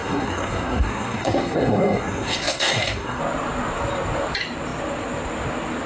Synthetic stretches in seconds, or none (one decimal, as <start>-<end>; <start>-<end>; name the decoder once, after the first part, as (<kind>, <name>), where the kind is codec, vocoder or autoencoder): 0.0-3.2 (codec, SNAC)